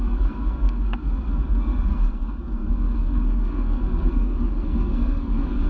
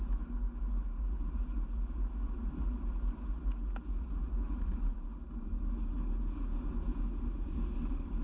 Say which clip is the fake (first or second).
first